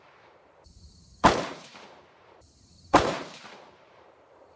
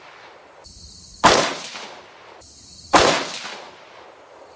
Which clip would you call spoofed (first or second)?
first